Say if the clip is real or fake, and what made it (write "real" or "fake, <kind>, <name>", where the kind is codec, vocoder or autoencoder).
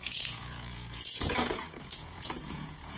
fake, vocoder, Vocos